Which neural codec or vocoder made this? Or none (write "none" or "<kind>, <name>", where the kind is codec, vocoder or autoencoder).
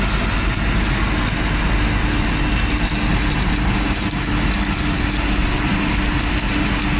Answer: none